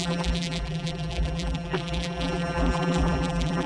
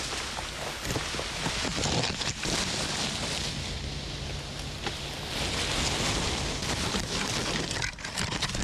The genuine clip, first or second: second